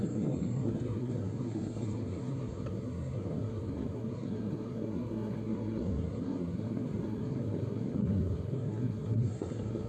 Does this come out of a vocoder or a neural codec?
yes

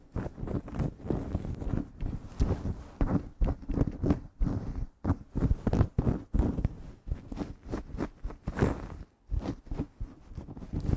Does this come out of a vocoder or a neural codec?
no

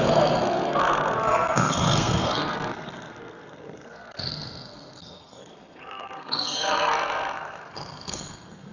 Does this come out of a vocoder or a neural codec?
yes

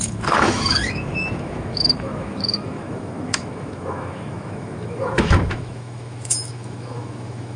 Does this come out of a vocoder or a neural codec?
yes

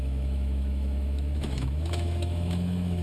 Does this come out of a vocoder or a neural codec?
yes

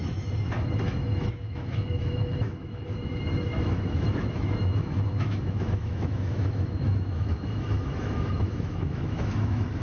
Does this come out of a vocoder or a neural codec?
yes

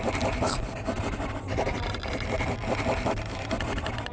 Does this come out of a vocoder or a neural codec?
no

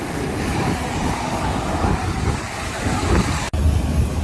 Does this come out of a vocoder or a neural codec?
yes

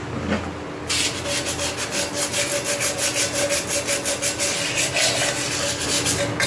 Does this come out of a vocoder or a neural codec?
no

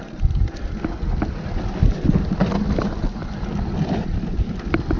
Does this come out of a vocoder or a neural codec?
no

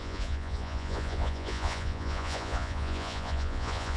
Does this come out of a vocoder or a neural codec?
yes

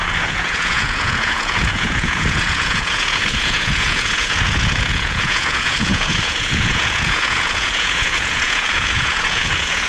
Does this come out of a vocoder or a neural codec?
yes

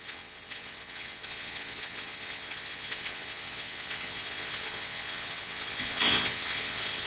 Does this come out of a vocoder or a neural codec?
yes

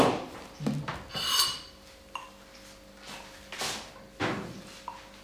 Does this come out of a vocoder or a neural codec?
no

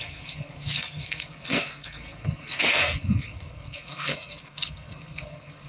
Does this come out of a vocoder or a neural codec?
yes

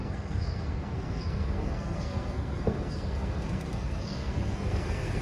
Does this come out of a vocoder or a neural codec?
yes